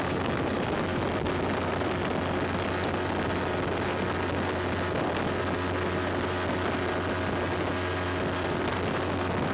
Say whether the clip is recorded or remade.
recorded